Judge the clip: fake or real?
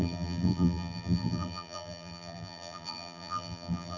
fake